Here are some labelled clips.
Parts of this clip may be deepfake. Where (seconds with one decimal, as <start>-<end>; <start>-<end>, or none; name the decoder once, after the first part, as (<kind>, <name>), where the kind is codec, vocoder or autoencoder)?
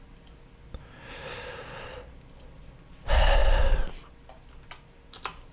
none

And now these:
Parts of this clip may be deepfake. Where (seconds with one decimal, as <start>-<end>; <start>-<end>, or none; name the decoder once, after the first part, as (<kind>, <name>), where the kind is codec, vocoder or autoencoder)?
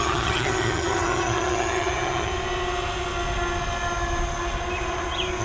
0.0-2.3 (vocoder, HiFi-GAN)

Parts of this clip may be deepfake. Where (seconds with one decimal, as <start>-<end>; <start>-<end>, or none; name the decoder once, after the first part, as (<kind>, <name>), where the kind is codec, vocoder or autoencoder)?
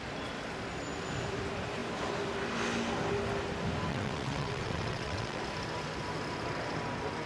3.9-5.4 (vocoder, WaveNeXt)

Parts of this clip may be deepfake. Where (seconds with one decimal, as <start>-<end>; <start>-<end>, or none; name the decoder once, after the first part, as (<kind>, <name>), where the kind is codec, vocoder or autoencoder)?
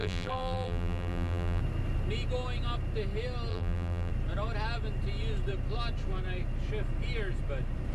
0.0-1.6 (vocoder, BigVGAN v2); 3.5-4.1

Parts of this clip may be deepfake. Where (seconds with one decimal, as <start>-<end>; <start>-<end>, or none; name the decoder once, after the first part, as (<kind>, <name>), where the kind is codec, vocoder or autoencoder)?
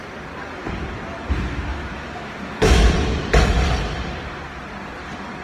1.7-2.9 (autoencoder, DAC-VAE)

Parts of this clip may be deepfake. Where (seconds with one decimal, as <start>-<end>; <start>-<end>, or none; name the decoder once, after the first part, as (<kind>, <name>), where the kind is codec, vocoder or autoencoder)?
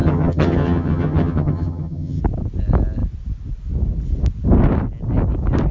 0.0-2.2 (vocoder, HiFi-GAN)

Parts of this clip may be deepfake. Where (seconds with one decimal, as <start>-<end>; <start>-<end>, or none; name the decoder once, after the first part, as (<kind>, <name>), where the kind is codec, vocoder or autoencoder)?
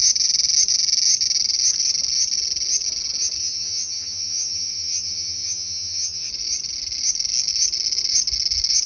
3.4-6.3 (vocoder, HiFi-GAN)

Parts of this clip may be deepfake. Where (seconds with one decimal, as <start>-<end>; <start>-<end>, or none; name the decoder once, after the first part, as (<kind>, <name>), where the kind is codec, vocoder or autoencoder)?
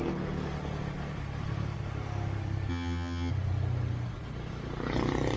2.7-3.3 (vocoder, HiFi-GAN)